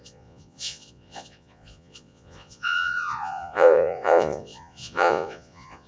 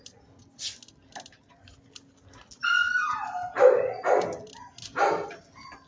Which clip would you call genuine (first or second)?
second